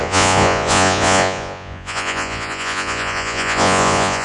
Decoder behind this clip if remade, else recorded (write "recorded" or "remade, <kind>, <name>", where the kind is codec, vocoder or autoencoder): remade, vocoder, Vocos